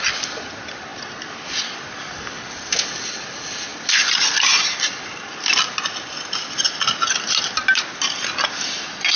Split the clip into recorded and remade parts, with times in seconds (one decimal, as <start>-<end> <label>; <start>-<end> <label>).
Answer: 0.0-9.2 recorded